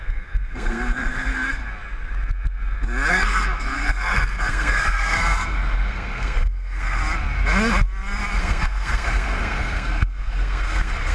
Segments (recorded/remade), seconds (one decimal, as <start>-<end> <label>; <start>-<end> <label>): 0.0-1.6 remade; 1.6-3.1 recorded; 3.1-7.0 remade; 7.0-8.4 recorded; 8.4-11.1 remade